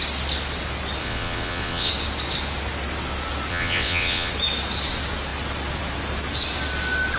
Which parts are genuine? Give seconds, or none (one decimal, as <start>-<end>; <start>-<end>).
0.0-1.0; 1.9-3.5; 4.3-7.2